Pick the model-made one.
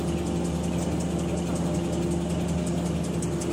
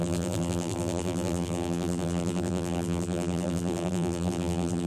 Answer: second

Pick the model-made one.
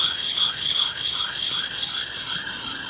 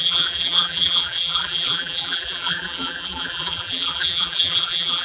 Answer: second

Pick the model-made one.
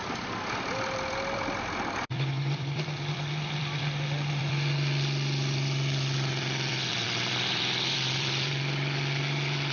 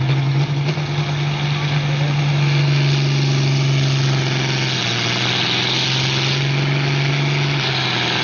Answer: first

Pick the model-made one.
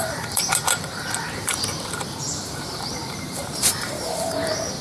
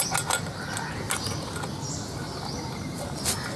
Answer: first